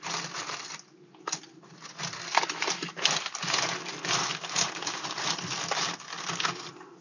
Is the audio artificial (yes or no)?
no